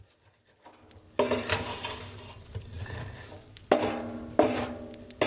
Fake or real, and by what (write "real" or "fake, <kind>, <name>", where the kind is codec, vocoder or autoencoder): real